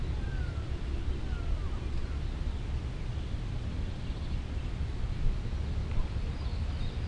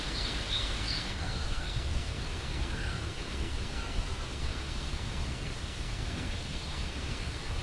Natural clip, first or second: first